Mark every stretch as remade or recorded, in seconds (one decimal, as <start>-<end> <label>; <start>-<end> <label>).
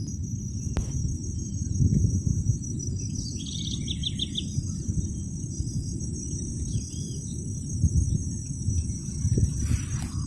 0.0-10.3 recorded